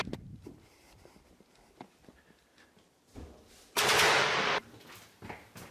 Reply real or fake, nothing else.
real